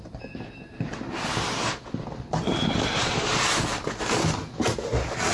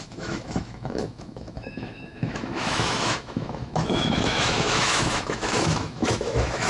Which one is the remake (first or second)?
second